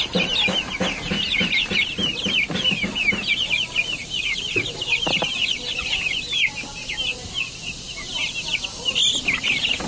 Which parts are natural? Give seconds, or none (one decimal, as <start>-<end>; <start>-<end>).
0.0-4.0; 5.1-9.9